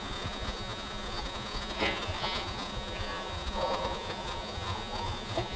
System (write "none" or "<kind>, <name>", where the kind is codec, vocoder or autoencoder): vocoder, Vocos